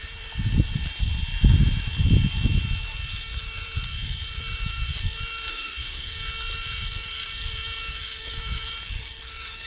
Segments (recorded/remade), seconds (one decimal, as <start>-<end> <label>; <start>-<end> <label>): 0.0-5.5 recorded; 5.5-6.1 remade; 6.1-9.7 recorded

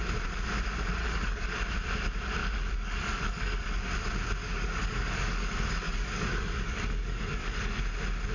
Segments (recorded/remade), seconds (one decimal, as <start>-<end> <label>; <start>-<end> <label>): 0.0-1.0 recorded; 1.0-1.6 remade; 1.6-2.4 recorded; 2.4-3.9 remade; 3.9-4.4 recorded; 4.4-7.8 remade; 7.8-8.3 recorded

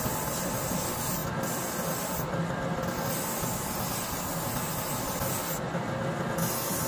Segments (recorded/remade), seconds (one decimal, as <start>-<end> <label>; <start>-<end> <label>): 0.0-6.9 recorded

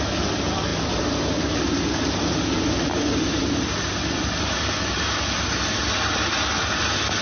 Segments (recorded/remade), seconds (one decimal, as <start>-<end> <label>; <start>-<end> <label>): 0.0-7.2 recorded

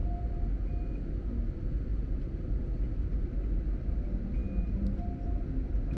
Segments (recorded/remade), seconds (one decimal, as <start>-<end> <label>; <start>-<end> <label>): 0.0-6.0 recorded